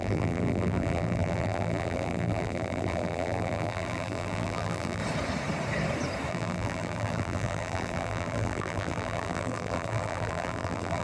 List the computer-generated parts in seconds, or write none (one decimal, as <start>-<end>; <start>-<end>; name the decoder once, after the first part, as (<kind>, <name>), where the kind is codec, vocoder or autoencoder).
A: 0.0-5.0 (vocoder, BigVGAN v2); 6.3-11.0